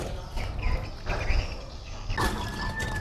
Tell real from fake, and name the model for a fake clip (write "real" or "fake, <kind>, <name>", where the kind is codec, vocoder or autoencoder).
real